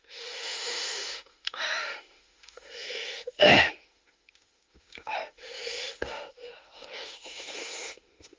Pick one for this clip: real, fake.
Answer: fake